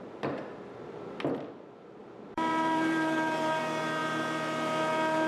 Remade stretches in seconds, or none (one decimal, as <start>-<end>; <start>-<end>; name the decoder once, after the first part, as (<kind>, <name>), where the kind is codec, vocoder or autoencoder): 2.0-3.6 (vocoder, BigVGAN v2)